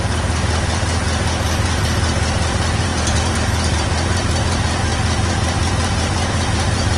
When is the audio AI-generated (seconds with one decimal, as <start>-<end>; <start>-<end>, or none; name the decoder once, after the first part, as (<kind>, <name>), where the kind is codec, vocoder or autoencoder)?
0.0-7.0 (vocoder, BigVGAN v2)